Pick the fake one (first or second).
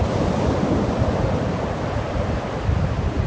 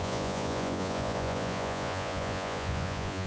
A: second